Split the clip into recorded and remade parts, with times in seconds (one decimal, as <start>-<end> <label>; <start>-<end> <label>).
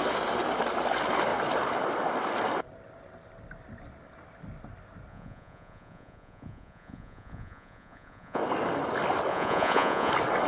0.0-5.1 recorded; 5.1-8.4 remade; 8.4-9.3 recorded; 9.3-10.1 remade; 10.1-10.5 recorded